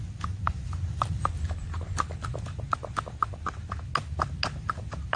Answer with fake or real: real